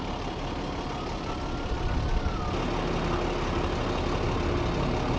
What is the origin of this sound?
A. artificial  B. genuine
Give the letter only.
B